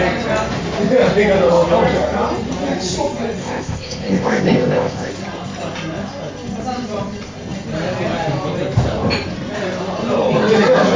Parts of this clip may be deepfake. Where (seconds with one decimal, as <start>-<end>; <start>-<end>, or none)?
3.4-5.1